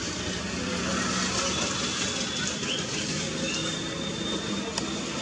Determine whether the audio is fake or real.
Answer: real